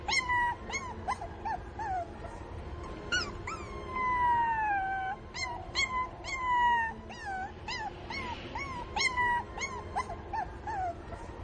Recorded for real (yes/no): yes